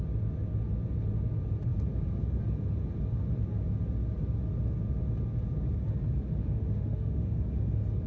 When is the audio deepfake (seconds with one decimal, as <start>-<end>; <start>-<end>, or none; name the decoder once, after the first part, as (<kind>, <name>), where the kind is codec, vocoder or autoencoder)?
6.4-7.4 (autoencoder, DAC-VAE)